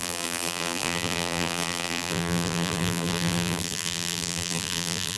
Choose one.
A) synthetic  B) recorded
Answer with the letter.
A